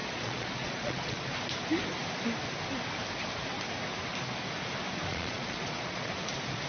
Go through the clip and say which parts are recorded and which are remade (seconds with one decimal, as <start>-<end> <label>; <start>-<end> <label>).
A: 0.0-1.3 remade; 1.3-5.1 recorded; 5.1-6.1 remade; 6.1-6.7 recorded